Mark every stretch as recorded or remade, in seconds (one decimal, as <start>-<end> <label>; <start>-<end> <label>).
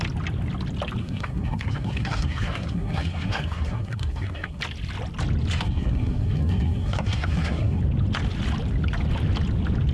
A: 0.0-1.0 recorded; 1.0-4.6 remade; 4.6-5.5 recorded; 5.5-7.8 remade; 7.8-9.9 recorded